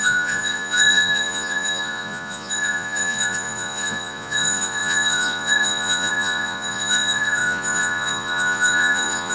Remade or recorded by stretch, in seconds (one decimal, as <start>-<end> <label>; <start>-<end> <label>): 0.0-9.3 remade